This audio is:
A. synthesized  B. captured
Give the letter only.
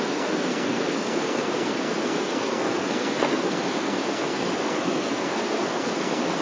A